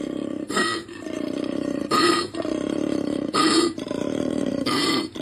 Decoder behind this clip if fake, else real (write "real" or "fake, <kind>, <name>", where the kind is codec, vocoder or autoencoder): fake, vocoder, BigVGAN v2